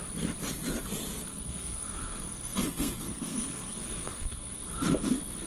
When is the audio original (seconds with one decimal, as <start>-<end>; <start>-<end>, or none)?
0.0-1.3; 4.6-5.5